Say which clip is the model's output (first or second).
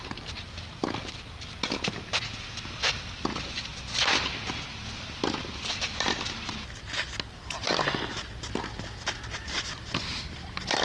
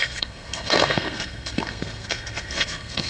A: second